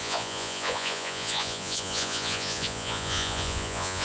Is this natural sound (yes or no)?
no